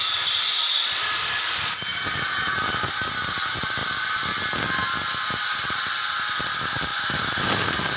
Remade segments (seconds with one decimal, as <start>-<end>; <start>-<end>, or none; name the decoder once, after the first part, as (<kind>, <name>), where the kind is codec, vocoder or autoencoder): none